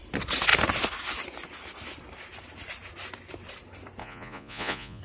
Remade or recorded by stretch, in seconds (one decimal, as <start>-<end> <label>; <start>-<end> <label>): 0.0-4.0 recorded; 4.0-5.0 remade